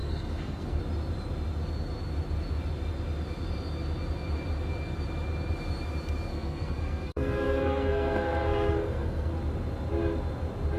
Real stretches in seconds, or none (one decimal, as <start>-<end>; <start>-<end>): 0.8-6.3; 9.3-10.8